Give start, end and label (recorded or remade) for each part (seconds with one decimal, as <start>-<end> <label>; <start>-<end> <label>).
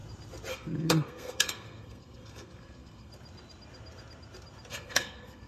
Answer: 0.0-0.5 recorded; 0.5-3.1 remade; 3.1-4.7 recorded; 4.7-5.5 remade